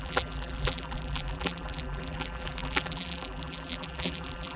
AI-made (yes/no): yes